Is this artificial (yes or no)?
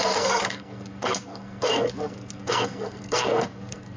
yes